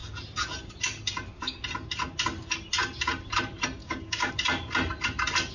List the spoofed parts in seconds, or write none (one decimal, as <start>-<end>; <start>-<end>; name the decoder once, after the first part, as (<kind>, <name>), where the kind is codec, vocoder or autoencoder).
3.8-4.3 (codec, DAC)